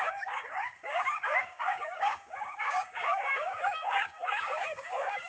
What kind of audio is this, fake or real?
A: fake